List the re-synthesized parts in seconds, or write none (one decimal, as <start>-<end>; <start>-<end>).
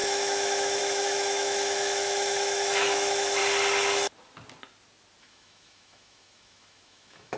0.0-3.4; 5.2-7.4